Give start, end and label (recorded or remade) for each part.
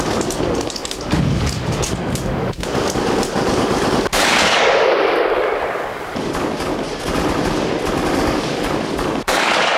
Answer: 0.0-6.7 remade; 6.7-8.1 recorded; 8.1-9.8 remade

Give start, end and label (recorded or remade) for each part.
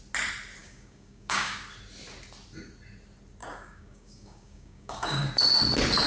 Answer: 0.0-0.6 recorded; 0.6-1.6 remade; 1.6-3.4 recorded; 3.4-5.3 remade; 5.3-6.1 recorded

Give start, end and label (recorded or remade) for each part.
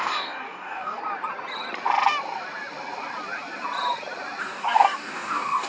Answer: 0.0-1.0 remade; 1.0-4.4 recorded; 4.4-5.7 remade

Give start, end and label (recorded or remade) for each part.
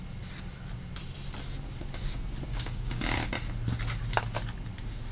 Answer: 0.0-2.5 recorded; 2.5-3.3 remade; 3.3-5.1 recorded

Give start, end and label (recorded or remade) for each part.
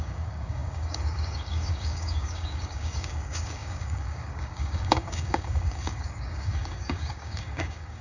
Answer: 0.0-8.0 remade